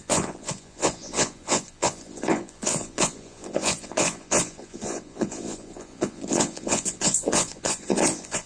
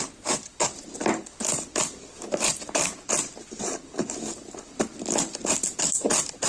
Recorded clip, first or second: second